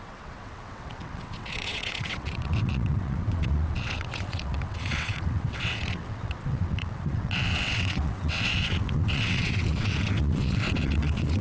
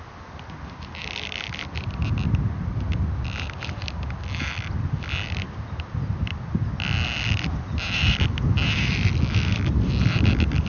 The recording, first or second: second